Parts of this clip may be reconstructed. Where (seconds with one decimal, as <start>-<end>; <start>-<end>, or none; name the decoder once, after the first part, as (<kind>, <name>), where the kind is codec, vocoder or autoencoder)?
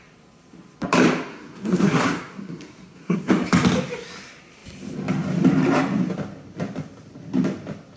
1.3-3.3 (codec, SNAC)